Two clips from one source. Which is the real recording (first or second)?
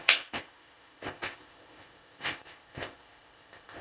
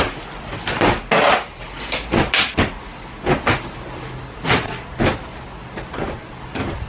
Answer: second